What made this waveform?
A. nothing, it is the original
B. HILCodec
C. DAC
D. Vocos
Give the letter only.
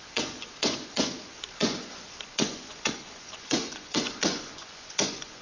D